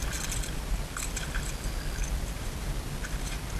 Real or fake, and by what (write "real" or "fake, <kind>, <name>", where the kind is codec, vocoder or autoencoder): real